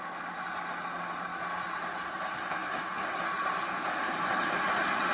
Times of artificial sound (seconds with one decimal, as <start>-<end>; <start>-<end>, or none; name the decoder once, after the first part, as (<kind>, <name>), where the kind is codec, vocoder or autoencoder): none